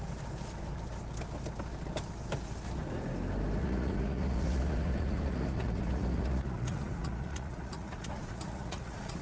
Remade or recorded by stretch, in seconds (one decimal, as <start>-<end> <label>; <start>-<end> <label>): 0.0-3.6 recorded; 3.6-9.2 remade